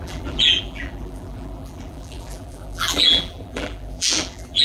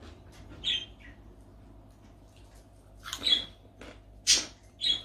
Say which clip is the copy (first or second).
first